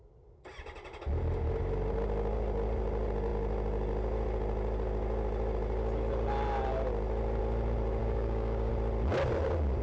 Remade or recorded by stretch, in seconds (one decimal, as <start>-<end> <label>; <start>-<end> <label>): 0.0-8.0 recorded; 8.0-8.7 remade; 8.7-9.8 recorded

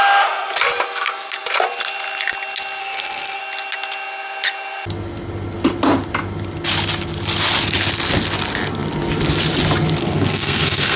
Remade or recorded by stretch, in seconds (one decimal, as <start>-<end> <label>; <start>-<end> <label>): 0.0-2.8 recorded; 2.8-3.4 remade; 3.4-10.0 recorded; 10.0-11.0 remade

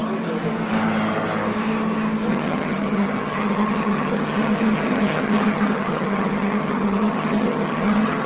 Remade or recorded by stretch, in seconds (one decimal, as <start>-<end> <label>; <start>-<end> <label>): 0.0-2.3 recorded; 2.3-8.3 remade

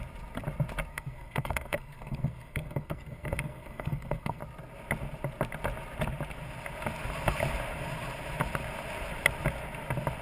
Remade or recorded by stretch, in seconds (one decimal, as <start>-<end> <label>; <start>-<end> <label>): 0.0-0.9 recorded; 0.9-4.4 remade; 4.4-10.2 recorded

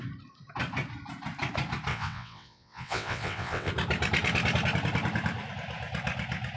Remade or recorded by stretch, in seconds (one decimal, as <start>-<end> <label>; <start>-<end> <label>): 0.0-1.9 recorded; 1.9-3.7 remade; 3.7-6.6 recorded

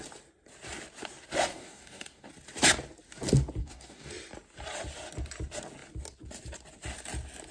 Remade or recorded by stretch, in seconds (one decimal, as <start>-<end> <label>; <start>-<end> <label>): 0.0-1.5 recorded; 1.5-2.3 remade; 2.3-3.6 recorded; 3.6-4.1 remade; 4.1-7.5 recorded

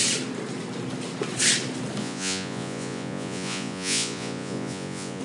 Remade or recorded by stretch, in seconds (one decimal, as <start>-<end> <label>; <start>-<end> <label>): 0.0-2.0 recorded; 2.0-5.2 remade